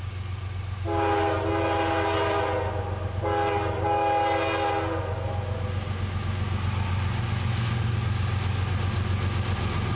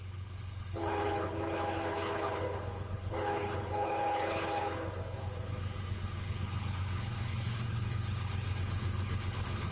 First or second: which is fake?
second